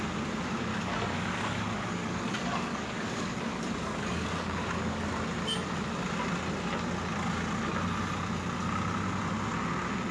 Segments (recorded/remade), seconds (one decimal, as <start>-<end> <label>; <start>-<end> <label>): 0.0-0.7 recorded; 0.7-5.0 remade; 5.0-10.1 recorded